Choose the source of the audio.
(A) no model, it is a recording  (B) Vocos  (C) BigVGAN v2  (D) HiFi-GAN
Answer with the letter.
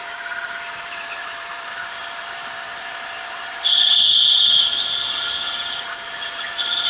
C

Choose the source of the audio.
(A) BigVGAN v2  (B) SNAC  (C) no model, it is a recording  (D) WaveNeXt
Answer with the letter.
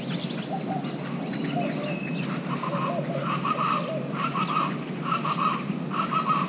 C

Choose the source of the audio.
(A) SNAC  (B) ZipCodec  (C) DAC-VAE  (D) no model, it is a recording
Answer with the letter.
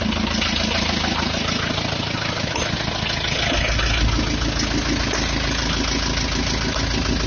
D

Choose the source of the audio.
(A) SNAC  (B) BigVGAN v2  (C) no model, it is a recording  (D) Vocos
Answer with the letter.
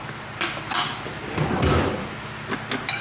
C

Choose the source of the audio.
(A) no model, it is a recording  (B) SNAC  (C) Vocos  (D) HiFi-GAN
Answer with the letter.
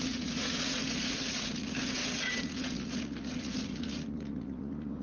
C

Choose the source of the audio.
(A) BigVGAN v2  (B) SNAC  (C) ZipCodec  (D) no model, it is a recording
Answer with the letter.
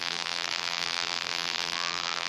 A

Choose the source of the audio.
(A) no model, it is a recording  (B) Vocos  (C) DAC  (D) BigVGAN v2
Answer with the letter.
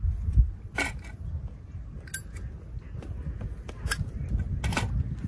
A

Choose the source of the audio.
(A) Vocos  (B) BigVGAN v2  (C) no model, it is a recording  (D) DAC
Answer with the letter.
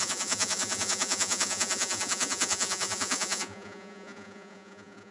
A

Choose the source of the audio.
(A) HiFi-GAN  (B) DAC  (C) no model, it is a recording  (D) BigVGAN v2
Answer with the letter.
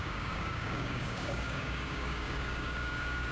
B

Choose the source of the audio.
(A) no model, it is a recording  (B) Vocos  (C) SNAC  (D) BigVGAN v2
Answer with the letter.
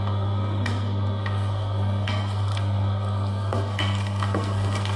C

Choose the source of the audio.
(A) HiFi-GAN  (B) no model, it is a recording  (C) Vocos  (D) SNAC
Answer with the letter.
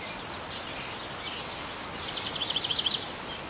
B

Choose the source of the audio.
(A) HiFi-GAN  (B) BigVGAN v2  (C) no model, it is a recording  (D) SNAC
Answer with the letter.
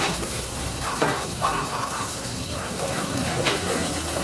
D